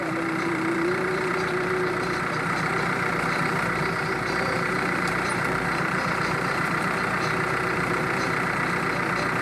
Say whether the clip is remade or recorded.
remade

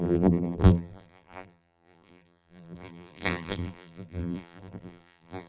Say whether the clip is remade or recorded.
remade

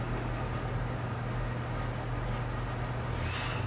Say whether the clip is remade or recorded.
recorded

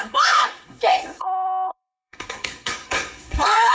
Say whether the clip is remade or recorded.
remade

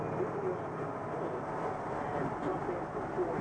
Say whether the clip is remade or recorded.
recorded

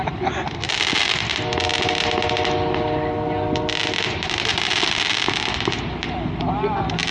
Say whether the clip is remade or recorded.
recorded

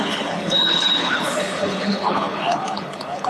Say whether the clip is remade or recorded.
remade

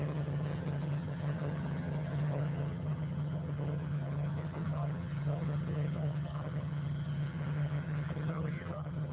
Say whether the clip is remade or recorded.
remade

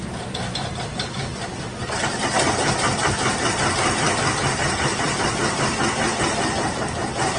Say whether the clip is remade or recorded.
remade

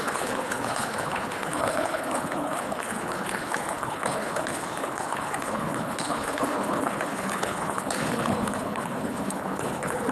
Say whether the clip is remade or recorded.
remade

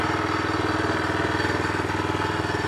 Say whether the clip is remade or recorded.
recorded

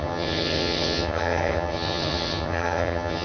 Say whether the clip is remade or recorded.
remade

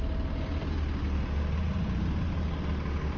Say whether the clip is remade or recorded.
recorded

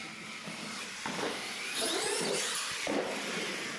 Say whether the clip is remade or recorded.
recorded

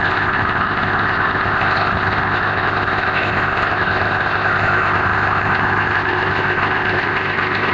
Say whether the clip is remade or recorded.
remade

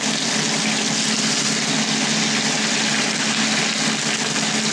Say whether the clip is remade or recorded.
recorded